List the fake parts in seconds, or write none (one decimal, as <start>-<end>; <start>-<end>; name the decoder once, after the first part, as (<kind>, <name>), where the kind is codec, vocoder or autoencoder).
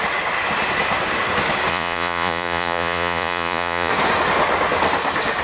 1.7-3.9 (vocoder, Vocos)